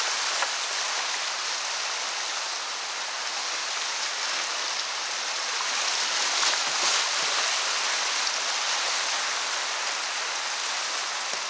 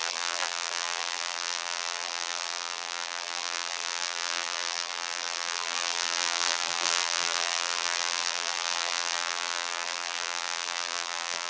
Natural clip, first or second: first